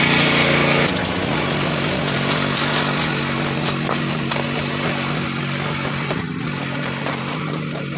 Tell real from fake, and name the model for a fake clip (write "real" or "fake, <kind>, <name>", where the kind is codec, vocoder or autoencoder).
real